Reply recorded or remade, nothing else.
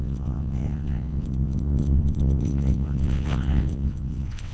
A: remade